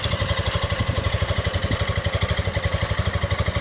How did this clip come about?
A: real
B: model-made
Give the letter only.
A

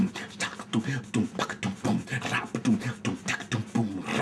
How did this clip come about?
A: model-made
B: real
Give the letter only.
B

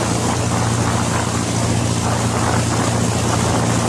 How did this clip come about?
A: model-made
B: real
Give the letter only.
B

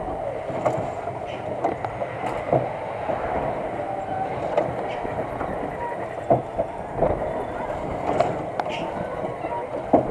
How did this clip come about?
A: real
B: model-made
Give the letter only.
A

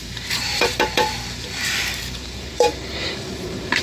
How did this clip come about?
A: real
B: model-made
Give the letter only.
B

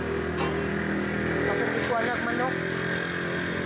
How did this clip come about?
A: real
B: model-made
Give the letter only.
A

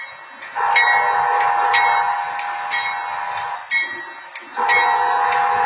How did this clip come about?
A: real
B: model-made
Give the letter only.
A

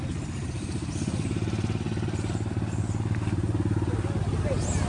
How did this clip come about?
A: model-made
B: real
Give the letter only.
B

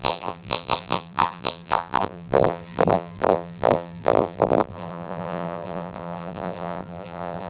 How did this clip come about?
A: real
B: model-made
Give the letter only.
B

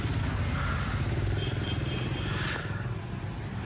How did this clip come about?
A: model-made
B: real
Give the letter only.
B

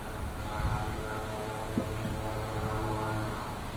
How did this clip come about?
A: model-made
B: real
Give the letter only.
A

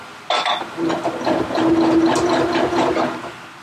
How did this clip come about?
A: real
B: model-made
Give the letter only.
A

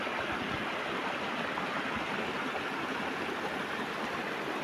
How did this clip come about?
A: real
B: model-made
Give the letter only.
A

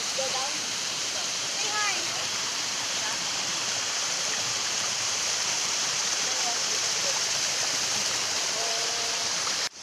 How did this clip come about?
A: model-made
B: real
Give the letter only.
A